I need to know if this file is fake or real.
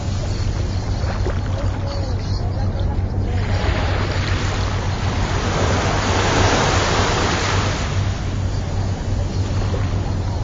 real